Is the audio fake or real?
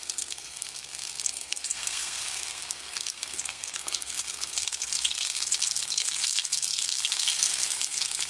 fake